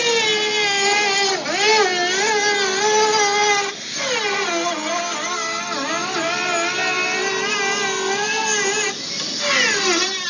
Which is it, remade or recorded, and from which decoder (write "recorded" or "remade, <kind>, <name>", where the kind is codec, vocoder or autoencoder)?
recorded